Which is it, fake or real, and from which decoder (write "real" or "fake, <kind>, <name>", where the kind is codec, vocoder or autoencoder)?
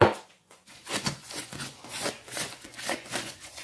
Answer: fake, vocoder, Vocos